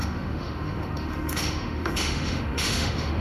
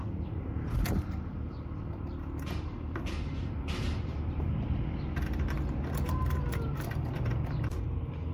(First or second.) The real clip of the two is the second